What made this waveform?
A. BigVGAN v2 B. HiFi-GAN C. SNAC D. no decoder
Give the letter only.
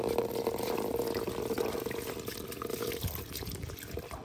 D